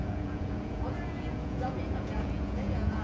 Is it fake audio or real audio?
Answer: fake